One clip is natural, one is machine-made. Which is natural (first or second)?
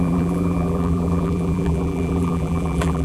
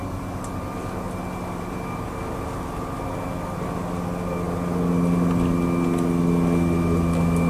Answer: second